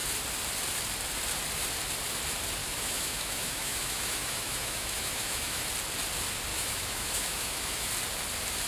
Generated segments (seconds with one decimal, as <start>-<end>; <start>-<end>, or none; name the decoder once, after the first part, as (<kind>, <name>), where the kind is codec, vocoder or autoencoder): 2.6-5.7 (autoencoder, DAC-VAE); 6.5-7.9